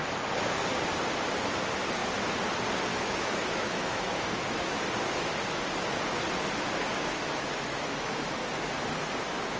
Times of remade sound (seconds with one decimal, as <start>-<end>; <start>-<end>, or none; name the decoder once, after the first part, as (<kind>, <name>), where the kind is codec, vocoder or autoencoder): 2.9-4.8 (autoencoder, DAC-VAE); 6.9-8.1